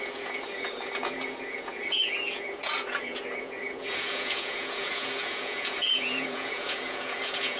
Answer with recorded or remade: remade